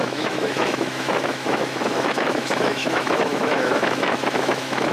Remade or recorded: remade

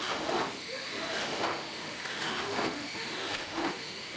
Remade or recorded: remade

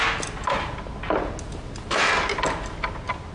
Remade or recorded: recorded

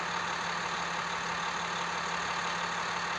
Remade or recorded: recorded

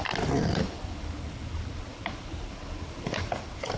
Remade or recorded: recorded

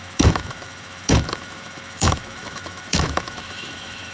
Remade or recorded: remade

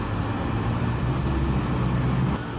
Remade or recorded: recorded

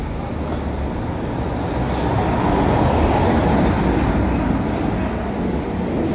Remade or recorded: recorded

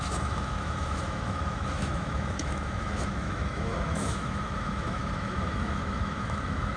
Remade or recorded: remade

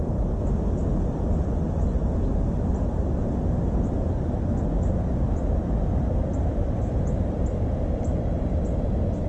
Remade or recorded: recorded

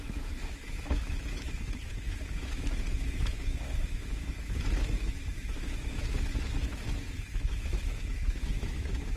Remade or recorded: remade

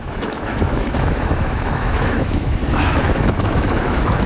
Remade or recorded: remade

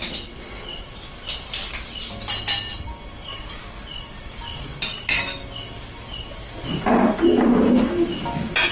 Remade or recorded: recorded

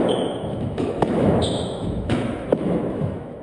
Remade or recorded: remade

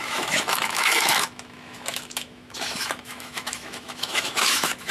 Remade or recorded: remade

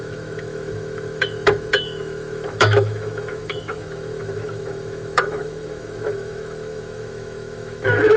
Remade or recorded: remade